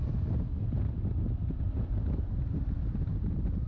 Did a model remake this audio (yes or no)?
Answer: no